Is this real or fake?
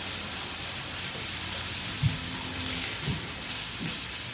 fake